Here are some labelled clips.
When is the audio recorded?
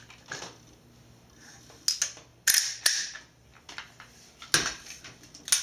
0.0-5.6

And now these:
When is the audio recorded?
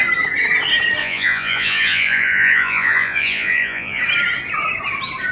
0.0-1.0; 4.0-5.3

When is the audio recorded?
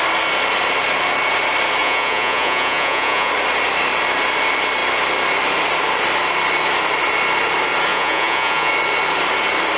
0.0-1.8; 3.3-7.9; 8.7-9.8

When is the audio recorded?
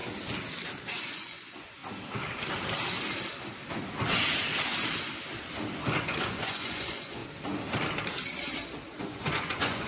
0.0-0.9; 1.8-6.0; 7.2-9.0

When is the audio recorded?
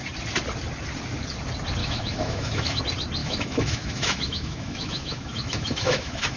0.0-1.8; 2.8-3.2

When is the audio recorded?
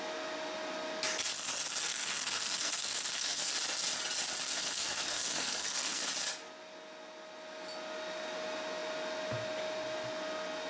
0.0-1.8; 3.5-4.5; 6.1-10.7